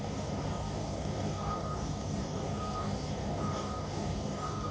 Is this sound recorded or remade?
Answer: remade